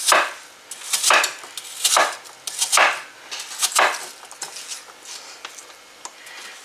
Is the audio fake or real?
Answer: real